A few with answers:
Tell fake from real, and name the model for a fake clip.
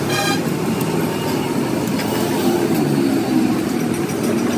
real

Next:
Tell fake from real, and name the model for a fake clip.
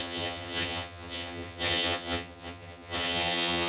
fake, vocoder, HiFi-GAN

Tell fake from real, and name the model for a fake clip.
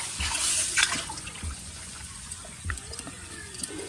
fake, vocoder, Vocos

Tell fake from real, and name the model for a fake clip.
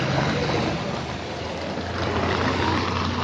real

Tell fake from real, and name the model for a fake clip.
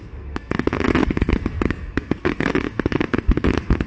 fake, codec, SNAC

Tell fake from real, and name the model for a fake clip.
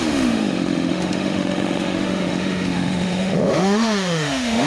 fake, autoencoder, DAC-VAE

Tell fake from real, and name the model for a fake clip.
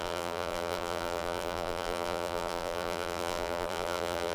fake, vocoder, BigVGAN v2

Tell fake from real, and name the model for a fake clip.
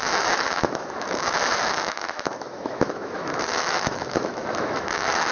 fake, autoencoder, DAC-VAE